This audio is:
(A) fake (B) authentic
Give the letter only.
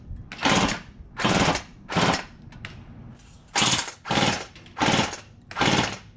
B